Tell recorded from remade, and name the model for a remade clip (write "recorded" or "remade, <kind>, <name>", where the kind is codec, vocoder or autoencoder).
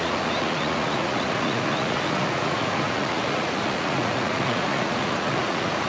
remade, vocoder, Vocos